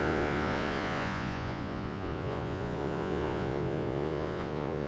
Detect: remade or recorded remade